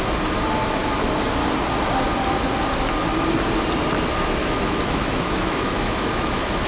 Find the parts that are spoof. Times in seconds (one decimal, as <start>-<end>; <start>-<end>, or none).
4.4-6.7